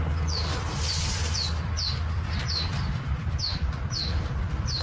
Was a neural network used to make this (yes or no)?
yes